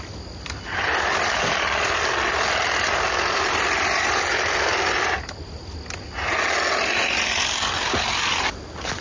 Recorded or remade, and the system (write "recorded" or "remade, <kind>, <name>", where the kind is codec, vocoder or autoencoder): recorded